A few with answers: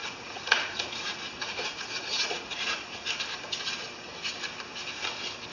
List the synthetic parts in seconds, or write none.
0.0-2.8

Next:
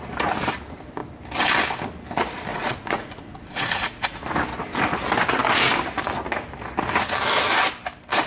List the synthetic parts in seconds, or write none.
2.5-4.2

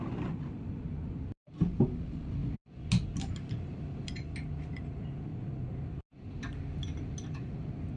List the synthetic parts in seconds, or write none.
none

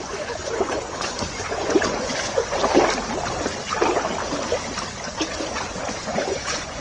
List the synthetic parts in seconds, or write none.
0.0-2.6; 5.0-6.8

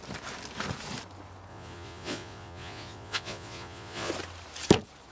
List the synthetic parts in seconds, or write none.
1.5-4.1